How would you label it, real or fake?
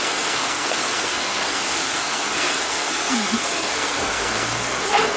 fake